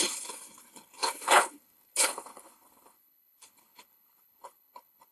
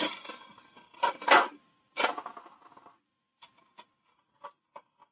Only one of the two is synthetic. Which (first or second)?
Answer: first